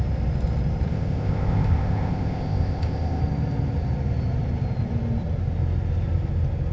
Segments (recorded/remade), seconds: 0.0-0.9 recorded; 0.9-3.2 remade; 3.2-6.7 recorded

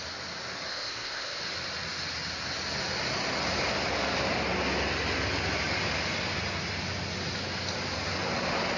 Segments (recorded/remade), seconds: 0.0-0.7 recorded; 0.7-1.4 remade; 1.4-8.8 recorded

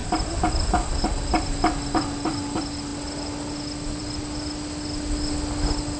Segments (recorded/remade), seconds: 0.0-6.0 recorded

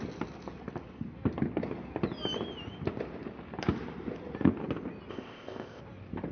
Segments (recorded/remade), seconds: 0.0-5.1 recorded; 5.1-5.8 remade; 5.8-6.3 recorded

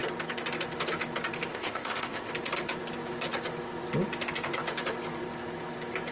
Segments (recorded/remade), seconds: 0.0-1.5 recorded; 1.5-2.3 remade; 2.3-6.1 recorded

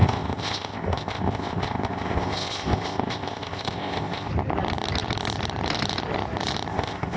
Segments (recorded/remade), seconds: 0.0-4.3 remade; 4.3-6.7 recorded; 6.7-7.2 remade

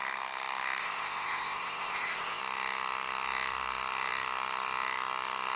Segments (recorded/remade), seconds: 0.0-0.8 recorded; 0.8-2.4 remade; 2.4-5.6 recorded

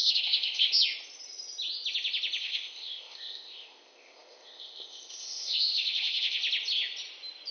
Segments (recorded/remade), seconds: 0.0-0.7 remade; 0.7-2.4 recorded; 2.4-6.4 remade; 6.4-7.5 recorded